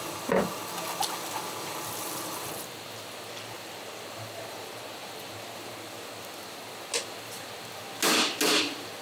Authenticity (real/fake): real